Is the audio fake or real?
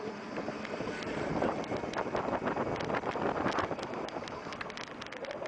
real